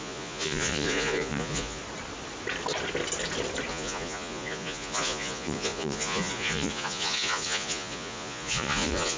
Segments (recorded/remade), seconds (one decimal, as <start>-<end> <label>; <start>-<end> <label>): 0.0-1.8 remade; 1.8-3.7 recorded; 3.7-9.2 remade